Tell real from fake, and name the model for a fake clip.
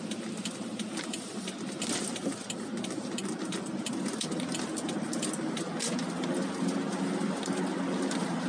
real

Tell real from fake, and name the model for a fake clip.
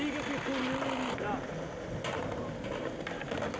real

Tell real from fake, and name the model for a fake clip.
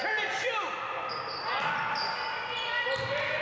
real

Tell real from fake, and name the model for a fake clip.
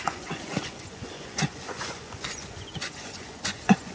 fake, vocoder, Vocos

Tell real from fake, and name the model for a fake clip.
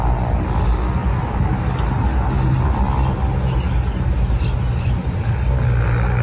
real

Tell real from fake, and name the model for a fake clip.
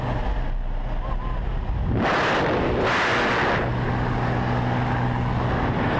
real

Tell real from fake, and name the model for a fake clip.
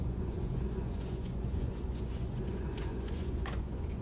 fake, vocoder, Vocos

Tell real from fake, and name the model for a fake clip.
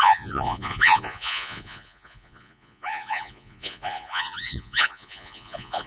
fake, vocoder, Vocos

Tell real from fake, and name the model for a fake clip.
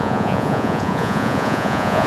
fake, vocoder, Vocos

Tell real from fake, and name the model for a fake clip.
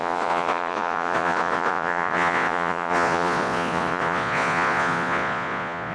fake, vocoder, Vocos